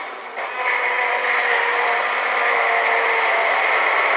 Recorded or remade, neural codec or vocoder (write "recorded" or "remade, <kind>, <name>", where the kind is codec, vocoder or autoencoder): recorded